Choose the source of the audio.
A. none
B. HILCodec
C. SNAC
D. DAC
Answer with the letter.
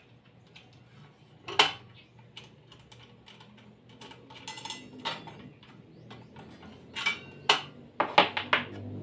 A